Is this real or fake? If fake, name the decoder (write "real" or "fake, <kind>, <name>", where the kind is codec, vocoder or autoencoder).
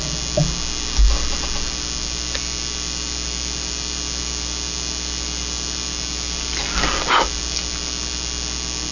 real